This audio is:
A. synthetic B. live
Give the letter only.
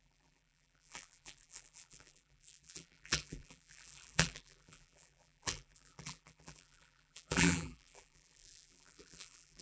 A